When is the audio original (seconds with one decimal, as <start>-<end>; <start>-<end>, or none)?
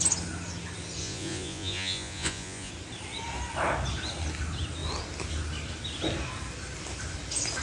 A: 0.0-1.0; 2.7-7.6